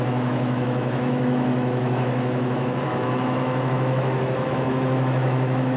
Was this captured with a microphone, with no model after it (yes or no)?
no